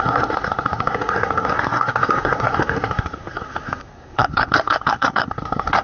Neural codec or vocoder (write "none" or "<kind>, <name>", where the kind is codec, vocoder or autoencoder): codec, SNAC